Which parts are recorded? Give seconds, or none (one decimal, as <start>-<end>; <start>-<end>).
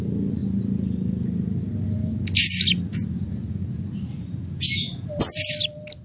0.0-6.0